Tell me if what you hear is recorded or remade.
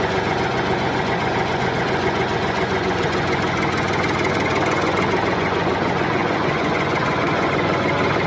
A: remade